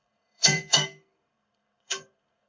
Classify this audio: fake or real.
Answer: fake